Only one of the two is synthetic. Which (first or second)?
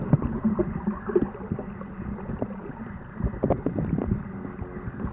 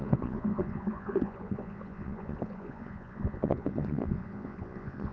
second